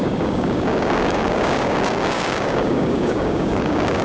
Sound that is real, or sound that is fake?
fake